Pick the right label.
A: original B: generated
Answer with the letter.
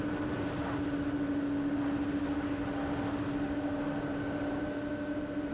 A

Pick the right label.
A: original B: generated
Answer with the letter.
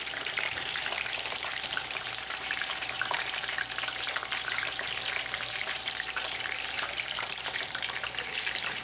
B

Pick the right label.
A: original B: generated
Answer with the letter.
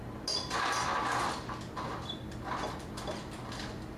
A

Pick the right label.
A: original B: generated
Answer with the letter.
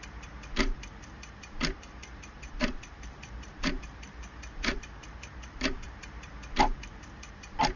B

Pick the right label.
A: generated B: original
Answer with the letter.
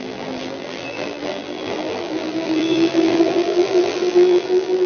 A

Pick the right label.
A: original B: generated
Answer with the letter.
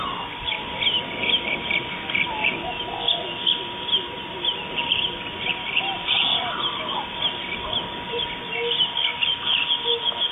A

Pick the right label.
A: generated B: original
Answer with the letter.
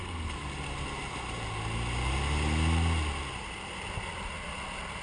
B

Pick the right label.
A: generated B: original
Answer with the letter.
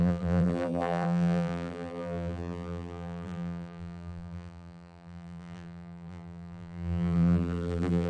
A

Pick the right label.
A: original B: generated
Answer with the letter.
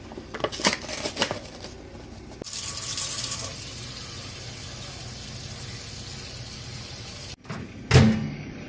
A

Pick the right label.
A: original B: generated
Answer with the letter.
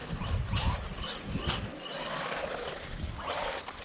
A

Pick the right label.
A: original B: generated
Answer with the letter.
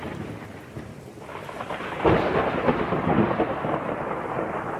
B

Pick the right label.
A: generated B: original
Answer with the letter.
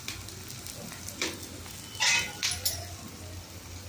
B